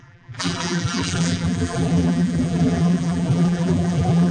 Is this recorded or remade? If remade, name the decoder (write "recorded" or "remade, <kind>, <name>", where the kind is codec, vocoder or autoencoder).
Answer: remade, vocoder, BigVGAN v2